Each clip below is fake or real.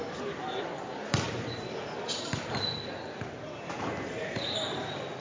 fake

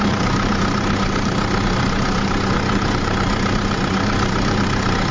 fake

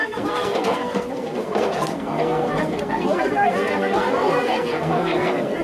fake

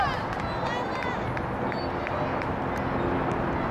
real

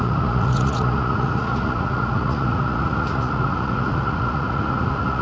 fake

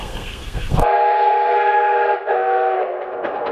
fake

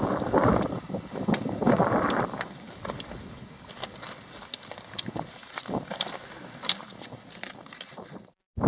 fake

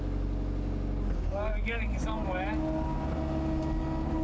real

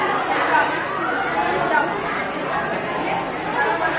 real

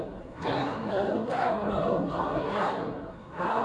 fake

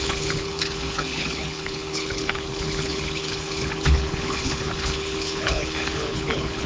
fake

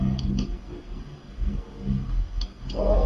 fake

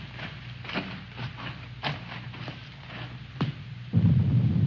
real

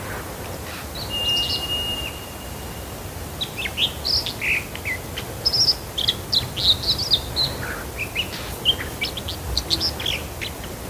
real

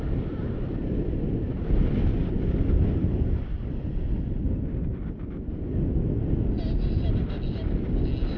real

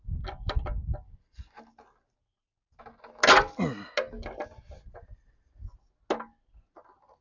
real